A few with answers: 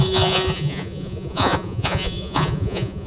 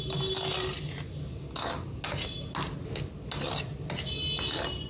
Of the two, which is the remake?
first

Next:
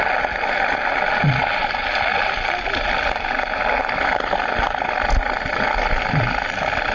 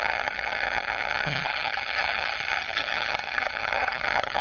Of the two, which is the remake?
second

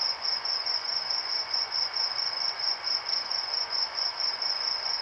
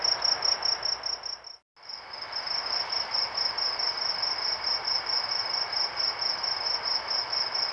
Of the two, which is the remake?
first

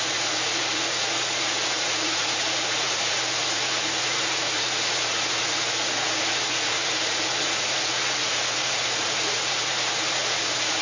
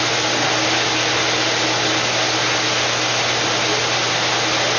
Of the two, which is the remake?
first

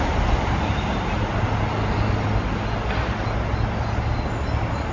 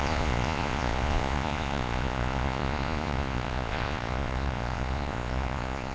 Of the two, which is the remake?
second